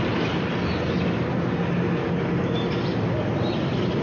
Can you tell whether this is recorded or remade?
recorded